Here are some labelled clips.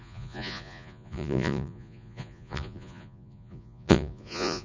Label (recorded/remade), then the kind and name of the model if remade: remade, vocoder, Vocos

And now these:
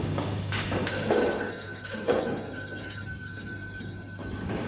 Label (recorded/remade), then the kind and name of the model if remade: remade, codec, DAC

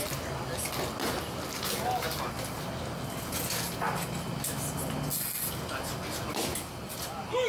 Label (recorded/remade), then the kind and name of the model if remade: recorded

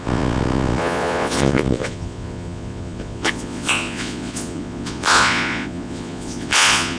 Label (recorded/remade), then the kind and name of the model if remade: remade, vocoder, Vocos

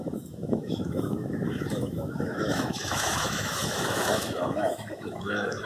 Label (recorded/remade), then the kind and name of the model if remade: remade, autoencoder, DAC-VAE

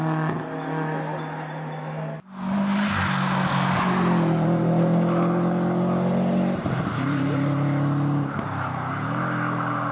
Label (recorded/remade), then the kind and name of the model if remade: recorded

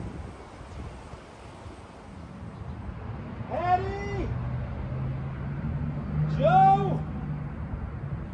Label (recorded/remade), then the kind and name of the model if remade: recorded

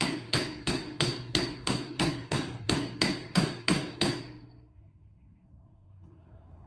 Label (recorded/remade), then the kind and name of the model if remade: remade, codec, SNAC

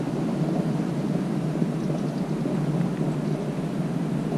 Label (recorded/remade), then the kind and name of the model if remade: recorded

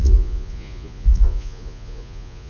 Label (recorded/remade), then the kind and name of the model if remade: remade, vocoder, Vocos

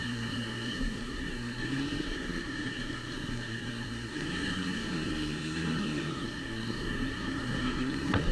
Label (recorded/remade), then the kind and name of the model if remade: remade, codec, SNAC